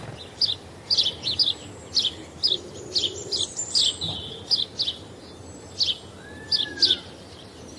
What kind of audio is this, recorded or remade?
recorded